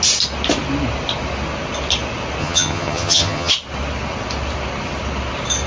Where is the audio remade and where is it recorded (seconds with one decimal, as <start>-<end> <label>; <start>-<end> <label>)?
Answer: 0.0-2.4 recorded; 2.4-3.5 remade; 3.5-5.7 recorded